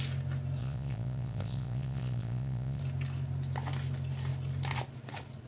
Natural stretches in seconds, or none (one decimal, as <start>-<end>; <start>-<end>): 0.0-0.6; 2.8-5.5